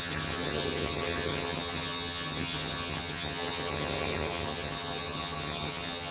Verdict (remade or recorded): remade